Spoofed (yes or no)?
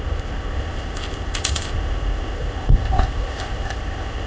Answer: yes